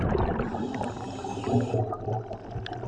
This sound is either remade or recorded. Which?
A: recorded